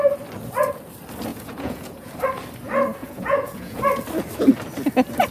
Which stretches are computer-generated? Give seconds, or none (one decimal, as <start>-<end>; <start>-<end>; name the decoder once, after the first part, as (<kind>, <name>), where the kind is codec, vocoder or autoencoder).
1.3-2.1 (vocoder, Vocos); 3.0-3.8